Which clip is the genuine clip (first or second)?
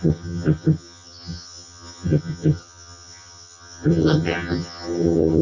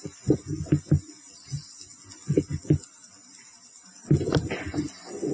second